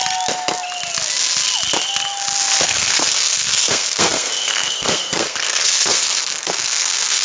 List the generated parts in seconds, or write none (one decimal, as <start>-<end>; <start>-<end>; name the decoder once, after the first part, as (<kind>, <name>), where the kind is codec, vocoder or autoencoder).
2.6-7.2 (codec, SNAC)